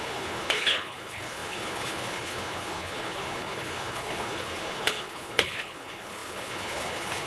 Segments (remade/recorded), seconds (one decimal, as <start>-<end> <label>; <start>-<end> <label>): 0.0-7.3 remade